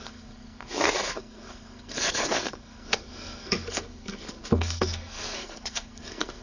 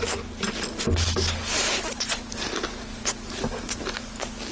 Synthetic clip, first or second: first